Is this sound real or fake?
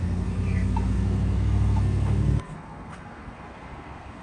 fake